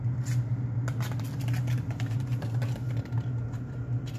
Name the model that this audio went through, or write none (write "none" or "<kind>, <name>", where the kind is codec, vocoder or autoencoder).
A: none